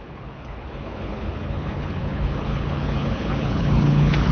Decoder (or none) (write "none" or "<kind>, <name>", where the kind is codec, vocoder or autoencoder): codec, HILCodec